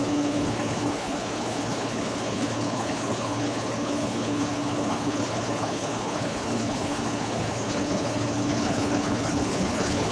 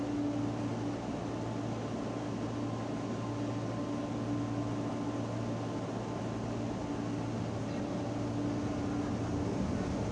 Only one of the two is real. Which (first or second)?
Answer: second